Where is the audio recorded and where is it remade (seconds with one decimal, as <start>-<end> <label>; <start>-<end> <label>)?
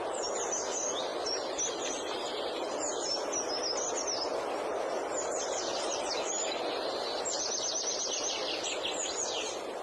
0.0-9.8 recorded